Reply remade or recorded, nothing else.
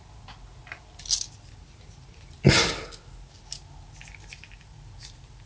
recorded